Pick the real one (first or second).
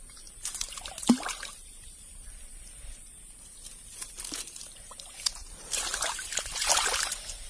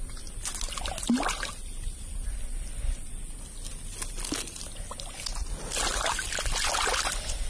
second